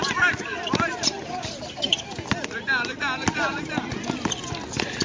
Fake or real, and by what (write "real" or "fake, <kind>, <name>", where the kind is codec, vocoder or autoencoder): real